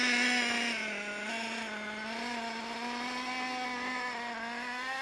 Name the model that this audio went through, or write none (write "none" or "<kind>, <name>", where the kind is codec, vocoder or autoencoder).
none